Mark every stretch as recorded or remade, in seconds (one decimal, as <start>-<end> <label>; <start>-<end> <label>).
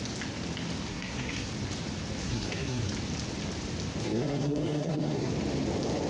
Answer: 0.0-0.9 recorded; 0.9-1.5 remade; 1.5-2.2 recorded; 2.2-2.9 remade; 2.9-4.0 recorded; 4.0-5.3 remade; 5.3-6.1 recorded